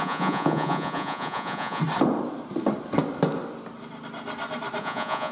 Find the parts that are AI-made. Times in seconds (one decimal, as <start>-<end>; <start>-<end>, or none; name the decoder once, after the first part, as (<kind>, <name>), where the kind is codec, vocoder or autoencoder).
0.0-1.8 (vocoder, Vocos); 4.8-5.3

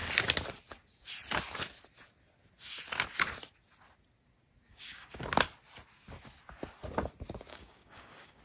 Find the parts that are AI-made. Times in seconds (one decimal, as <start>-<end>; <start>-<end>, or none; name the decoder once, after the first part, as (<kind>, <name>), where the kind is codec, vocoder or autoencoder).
4.7-5.2 (codec, DAC); 7.5-8.4